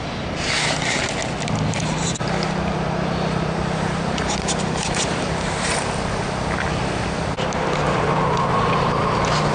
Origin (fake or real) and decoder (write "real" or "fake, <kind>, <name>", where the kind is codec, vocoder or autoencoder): fake, vocoder, BigVGAN v2